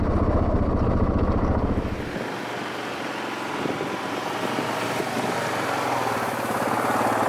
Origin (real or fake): real